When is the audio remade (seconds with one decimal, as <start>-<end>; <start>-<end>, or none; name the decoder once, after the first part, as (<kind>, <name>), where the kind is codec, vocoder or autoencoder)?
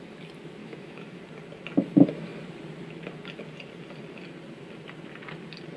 0.6-1.2 (autoencoder, DAC-VAE)